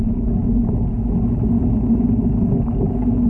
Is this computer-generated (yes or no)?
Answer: no